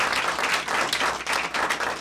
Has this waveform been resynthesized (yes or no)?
no